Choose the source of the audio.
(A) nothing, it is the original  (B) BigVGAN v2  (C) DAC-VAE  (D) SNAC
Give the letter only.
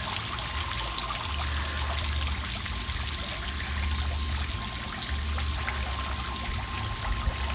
A